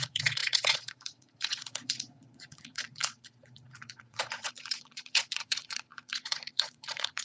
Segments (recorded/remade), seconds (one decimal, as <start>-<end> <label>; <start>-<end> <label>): 0.0-7.2 remade